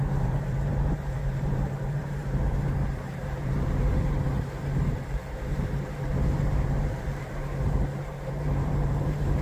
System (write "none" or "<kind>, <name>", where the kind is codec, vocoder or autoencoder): vocoder, BigVGAN v2